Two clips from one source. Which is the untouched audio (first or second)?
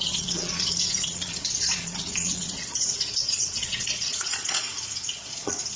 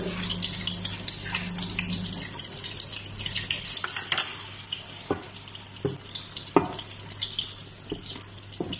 second